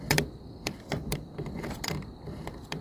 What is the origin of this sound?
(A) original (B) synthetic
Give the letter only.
B